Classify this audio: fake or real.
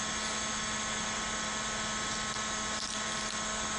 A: real